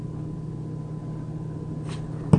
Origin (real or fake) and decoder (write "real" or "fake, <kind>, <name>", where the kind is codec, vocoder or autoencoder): real